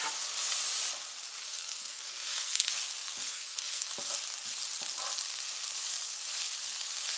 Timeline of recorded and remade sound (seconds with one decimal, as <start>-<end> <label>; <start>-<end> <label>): 0.0-1.4 recorded; 1.4-2.7 remade; 2.7-3.2 recorded; 3.2-3.9 remade; 3.9-7.2 recorded